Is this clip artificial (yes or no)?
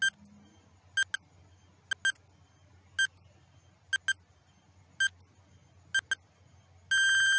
no